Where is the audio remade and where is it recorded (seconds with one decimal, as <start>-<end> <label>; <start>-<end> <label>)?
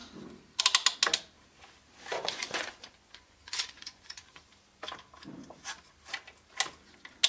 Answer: 0.0-2.1 recorded; 2.1-4.4 remade; 4.4-7.3 recorded